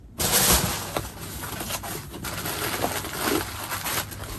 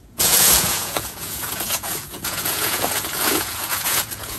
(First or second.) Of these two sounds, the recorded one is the first